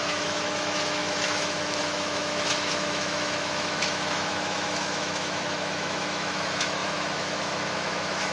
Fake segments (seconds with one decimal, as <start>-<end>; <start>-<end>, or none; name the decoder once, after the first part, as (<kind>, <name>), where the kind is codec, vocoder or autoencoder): 0.0-8.3 (autoencoder, DAC-VAE)